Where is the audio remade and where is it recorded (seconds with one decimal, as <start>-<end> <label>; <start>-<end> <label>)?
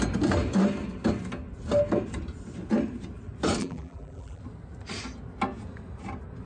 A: 0.0-3.6 recorded; 3.6-4.4 remade; 4.4-6.5 recorded